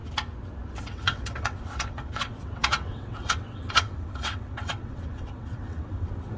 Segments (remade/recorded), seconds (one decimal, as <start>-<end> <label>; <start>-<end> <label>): 0.0-0.8 recorded; 0.8-6.4 remade